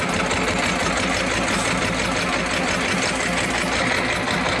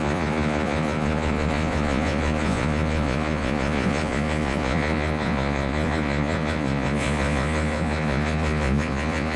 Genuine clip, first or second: first